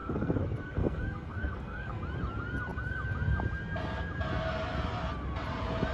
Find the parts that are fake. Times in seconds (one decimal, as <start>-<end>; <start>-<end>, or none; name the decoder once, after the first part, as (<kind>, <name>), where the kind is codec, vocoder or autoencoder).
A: 0.0-2.0 (codec, SNAC)